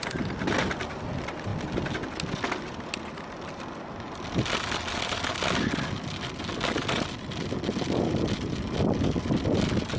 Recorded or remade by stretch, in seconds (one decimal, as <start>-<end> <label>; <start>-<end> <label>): 0.0-10.0 recorded